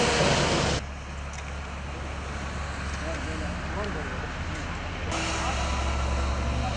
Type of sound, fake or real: real